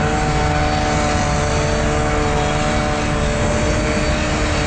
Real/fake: real